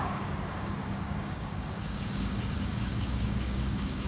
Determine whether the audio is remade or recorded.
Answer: remade